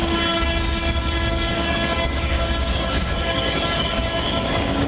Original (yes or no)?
no